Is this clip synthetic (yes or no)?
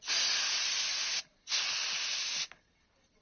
no